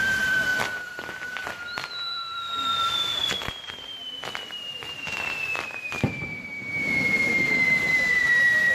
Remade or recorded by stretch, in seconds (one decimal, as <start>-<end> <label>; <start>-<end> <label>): 0.0-8.7 recorded